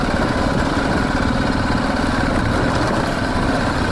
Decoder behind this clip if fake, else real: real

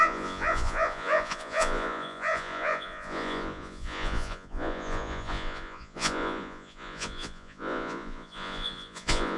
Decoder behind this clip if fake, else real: fake, vocoder, Vocos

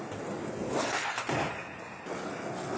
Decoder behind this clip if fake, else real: real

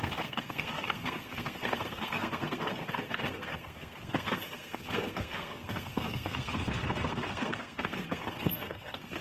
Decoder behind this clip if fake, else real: fake, codec, SNAC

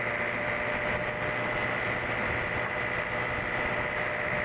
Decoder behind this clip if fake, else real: real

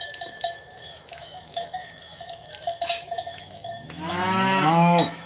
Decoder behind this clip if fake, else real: fake, autoencoder, DAC-VAE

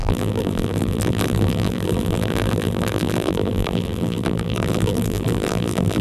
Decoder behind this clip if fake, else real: fake, vocoder, BigVGAN v2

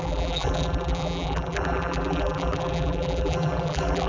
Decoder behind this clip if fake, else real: fake, vocoder, BigVGAN v2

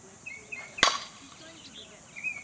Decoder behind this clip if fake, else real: real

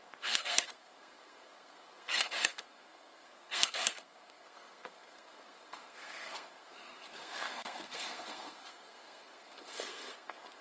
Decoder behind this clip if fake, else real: fake, codec, SNAC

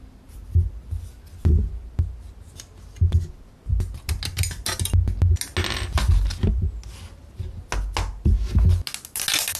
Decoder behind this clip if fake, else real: real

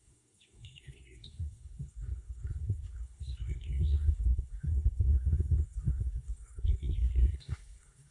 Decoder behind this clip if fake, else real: fake, codec, SNAC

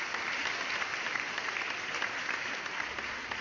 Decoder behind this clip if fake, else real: real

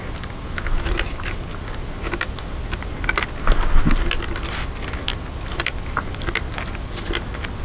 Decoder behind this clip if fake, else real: real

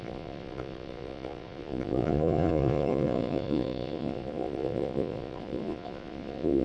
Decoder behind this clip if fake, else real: fake, vocoder, Vocos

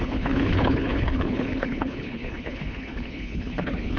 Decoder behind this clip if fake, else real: fake, codec, HILCodec